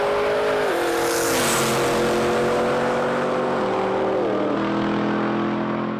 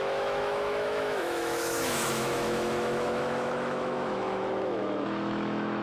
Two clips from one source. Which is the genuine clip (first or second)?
first